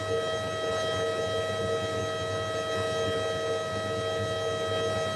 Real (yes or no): yes